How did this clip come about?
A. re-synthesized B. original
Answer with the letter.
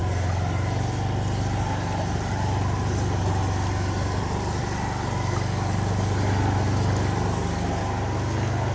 B